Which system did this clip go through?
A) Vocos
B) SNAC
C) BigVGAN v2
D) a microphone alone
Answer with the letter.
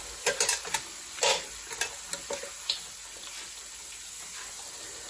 D